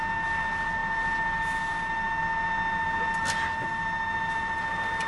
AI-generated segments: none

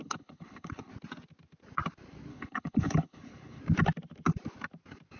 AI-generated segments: 0.0-0.9 (codec, HILCodec); 2.3-3.6

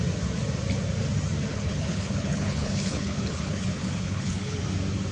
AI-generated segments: 1.5-4.6 (codec, HILCodec)

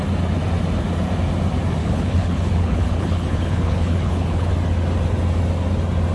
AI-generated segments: 1.8-4.5 (codec, HILCodec)